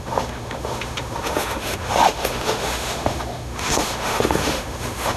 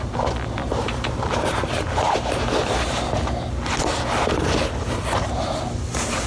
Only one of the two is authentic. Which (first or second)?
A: second